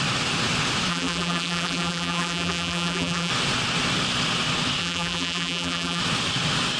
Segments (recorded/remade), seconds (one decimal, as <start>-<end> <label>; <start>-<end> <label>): 0.0-0.9 recorded; 0.9-3.3 remade; 3.3-4.8 recorded; 4.8-6.0 remade; 6.0-6.8 recorded